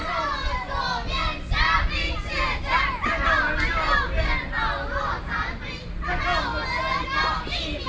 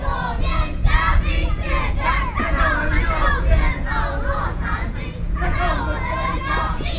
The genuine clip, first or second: first